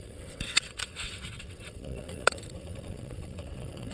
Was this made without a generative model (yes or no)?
no